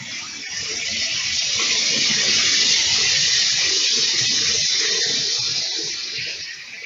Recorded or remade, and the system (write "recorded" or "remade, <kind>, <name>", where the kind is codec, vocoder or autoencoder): remade, vocoder, BigVGAN v2